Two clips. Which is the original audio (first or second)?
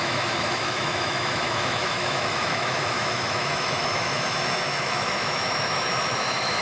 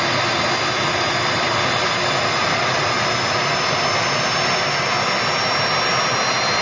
second